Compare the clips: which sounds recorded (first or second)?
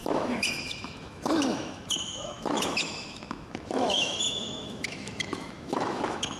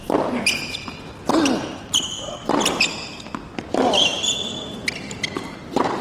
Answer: second